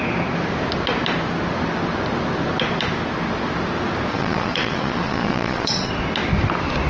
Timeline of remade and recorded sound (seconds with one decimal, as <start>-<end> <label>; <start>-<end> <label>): 0.0-4.1 recorded; 4.1-5.9 remade; 5.9-6.9 recorded